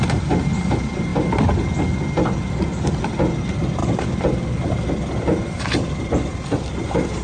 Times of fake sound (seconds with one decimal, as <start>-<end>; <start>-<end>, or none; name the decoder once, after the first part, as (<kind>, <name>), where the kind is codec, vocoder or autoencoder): 3.8-6.1 (vocoder, BigVGAN v2)